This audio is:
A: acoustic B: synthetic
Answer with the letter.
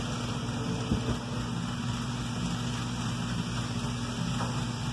A